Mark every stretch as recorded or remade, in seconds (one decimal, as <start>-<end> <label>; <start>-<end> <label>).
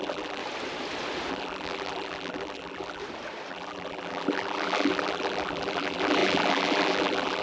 0.0-0.4 remade; 0.4-1.3 recorded; 1.3-3.0 remade; 3.0-3.5 recorded; 3.5-7.4 remade